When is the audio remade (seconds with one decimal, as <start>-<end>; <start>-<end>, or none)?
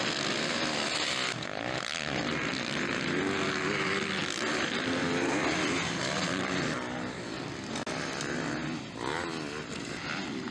4.2-7.5